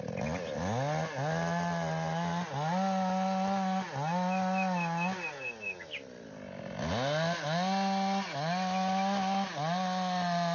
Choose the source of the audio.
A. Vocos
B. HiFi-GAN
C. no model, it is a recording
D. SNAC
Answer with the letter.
C